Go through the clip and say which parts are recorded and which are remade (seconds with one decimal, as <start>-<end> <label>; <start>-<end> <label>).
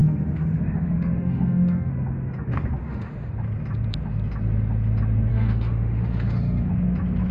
0.0-1.9 remade; 1.9-2.8 recorded; 2.8-3.3 remade; 3.3-5.3 recorded; 5.3-6.7 remade; 6.7-7.3 recorded